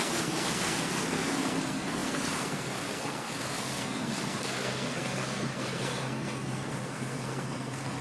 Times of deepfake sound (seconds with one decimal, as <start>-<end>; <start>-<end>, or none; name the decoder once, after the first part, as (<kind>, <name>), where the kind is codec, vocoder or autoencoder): 0.0-8.0 (codec, SNAC)